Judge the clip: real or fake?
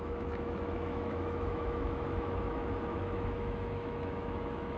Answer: fake